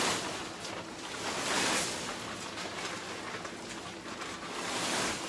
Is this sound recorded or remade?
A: recorded